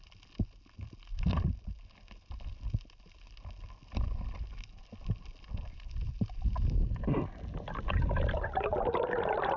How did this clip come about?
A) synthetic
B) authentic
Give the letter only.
B